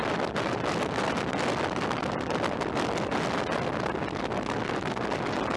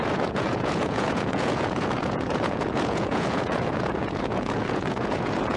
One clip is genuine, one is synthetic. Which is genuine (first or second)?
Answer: first